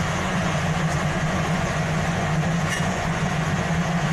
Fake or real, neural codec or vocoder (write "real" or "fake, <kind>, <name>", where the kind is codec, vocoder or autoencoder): fake, vocoder, Vocos